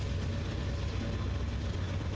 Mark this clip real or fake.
real